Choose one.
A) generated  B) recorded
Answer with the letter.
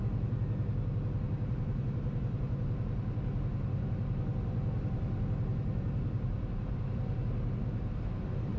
B